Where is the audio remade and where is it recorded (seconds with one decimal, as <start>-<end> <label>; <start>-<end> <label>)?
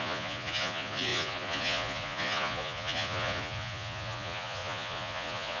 0.0-5.6 remade